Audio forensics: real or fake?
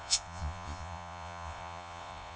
fake